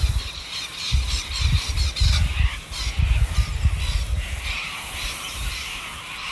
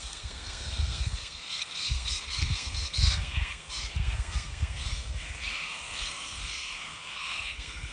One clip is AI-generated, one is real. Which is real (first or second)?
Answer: first